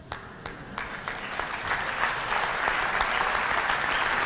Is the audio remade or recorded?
recorded